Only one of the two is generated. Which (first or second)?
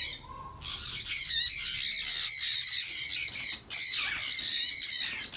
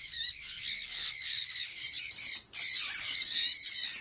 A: second